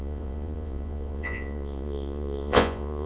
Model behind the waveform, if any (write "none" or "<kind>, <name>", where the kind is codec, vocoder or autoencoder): vocoder, Vocos